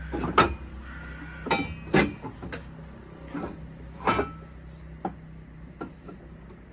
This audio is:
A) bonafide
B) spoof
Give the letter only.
A